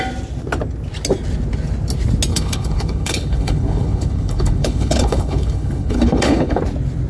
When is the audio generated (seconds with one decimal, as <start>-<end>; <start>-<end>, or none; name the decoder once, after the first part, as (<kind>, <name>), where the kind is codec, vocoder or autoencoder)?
2.3-6.6 (codec, HILCodec)